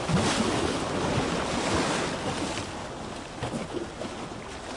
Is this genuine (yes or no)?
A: yes